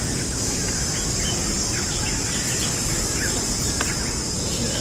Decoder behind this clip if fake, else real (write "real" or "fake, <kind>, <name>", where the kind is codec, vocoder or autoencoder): real